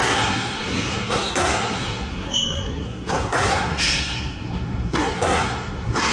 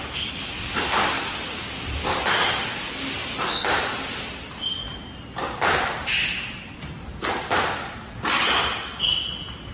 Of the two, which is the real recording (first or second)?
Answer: second